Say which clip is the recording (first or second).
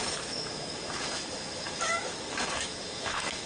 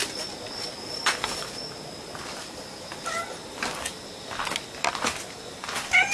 second